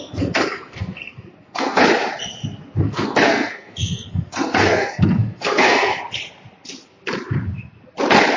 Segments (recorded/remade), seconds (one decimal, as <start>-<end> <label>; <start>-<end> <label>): 0.0-1.8 remade; 1.8-2.8 recorded; 2.8-5.9 remade; 5.9-8.4 recorded